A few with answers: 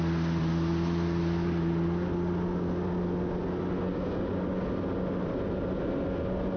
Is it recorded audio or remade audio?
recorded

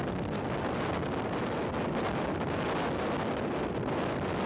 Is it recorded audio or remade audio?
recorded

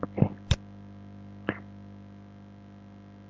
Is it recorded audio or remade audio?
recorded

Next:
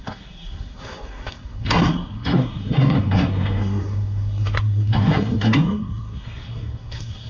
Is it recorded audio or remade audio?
remade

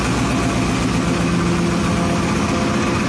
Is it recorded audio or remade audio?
recorded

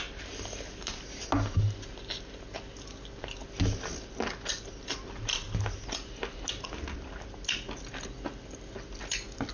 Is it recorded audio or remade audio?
recorded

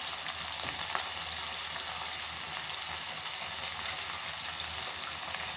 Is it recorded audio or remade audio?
recorded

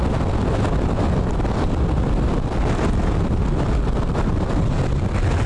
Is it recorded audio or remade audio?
recorded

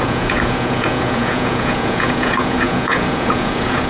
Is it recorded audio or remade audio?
remade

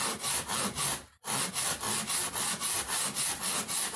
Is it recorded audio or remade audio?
recorded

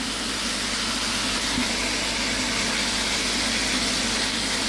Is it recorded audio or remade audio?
recorded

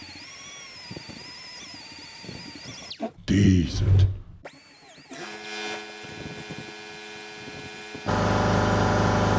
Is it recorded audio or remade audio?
recorded